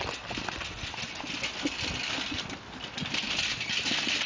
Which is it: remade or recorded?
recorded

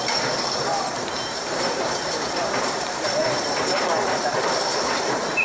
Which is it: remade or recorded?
remade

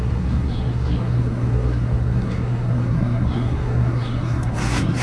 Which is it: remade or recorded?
remade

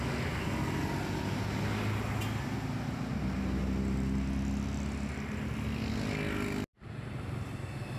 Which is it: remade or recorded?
recorded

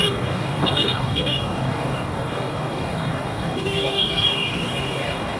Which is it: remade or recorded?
remade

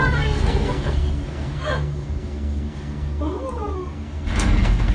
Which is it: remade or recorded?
remade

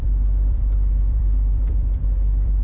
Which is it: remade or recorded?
remade